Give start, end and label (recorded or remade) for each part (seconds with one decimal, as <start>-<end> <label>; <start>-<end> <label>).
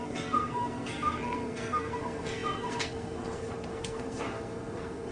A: 0.0-5.1 remade